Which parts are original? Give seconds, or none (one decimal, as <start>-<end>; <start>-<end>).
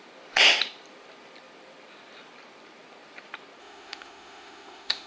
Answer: 0.0-3.6